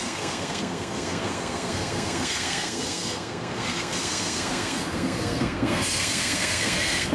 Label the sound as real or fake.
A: fake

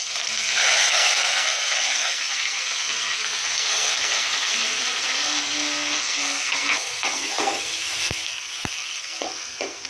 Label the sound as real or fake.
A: fake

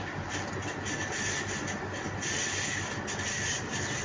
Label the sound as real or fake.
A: real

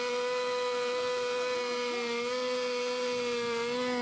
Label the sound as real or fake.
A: real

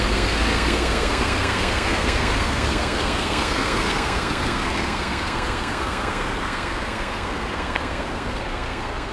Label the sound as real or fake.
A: fake